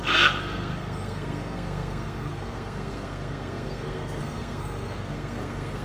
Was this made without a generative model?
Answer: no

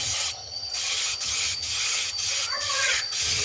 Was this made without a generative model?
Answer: no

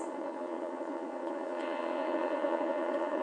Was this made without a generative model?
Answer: no